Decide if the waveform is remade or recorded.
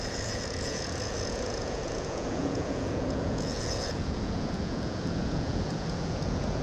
remade